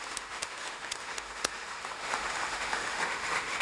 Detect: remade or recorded remade